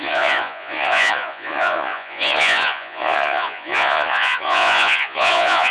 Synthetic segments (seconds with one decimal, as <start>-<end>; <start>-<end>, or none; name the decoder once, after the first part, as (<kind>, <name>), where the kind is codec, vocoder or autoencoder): 0.0-5.7 (vocoder, Vocos)

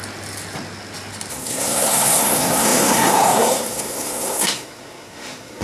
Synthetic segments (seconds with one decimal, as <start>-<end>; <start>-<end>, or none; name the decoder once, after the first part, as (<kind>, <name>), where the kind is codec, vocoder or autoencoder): 1.3-5.6 (codec, SNAC)